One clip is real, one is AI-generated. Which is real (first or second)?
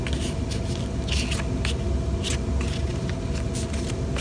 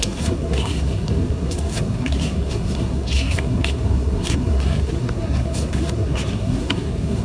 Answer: first